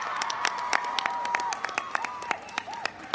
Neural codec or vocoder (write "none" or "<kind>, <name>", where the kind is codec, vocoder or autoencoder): none